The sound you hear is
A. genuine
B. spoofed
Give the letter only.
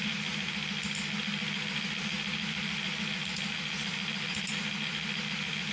A